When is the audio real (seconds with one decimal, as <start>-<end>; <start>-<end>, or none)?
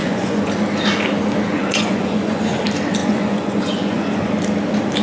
0.5-1.6; 2.6-3.0; 4.3-5.0